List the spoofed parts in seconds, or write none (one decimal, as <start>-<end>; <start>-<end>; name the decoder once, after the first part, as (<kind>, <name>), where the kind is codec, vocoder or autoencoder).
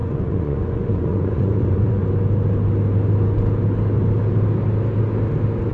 0.0-2.0 (vocoder, Vocos)